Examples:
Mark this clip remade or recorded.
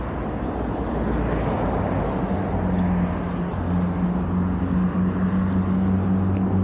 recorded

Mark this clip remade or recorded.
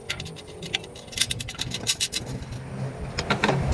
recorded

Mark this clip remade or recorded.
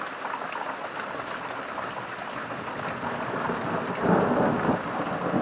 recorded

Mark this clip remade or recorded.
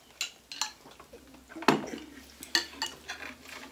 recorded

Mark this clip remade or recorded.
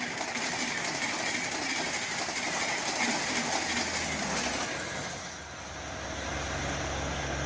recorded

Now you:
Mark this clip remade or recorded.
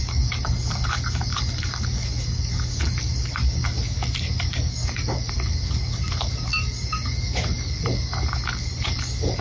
remade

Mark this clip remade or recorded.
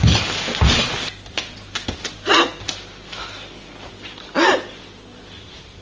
recorded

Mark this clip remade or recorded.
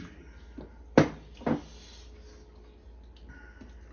recorded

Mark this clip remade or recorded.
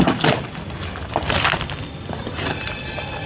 recorded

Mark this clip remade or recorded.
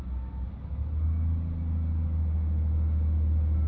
recorded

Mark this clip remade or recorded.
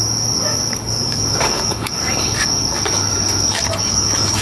remade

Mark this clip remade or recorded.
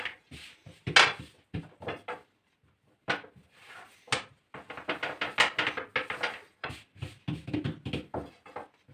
recorded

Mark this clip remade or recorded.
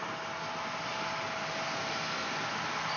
recorded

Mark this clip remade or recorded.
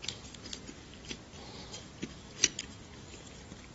recorded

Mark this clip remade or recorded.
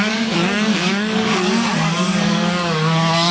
remade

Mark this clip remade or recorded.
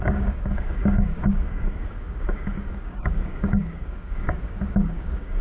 remade